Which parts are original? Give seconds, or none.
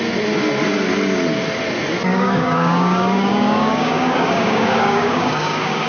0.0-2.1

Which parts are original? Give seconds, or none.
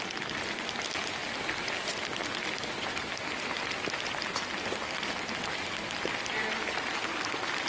0.0-7.7